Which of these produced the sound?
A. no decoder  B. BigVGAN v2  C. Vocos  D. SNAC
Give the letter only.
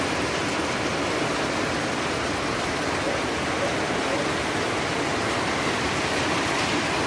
A